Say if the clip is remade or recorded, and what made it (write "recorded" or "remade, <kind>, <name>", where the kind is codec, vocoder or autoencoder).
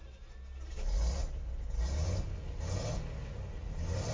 recorded